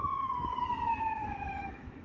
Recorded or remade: remade